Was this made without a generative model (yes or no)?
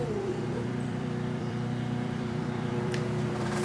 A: no